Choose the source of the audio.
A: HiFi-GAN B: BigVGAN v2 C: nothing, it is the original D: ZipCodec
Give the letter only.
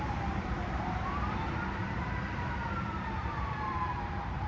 B